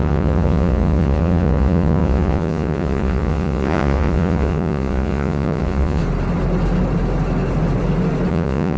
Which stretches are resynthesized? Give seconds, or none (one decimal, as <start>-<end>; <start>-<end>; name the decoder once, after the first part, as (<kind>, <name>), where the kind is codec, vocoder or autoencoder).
0.0-6.0 (vocoder, Vocos); 8.3-8.8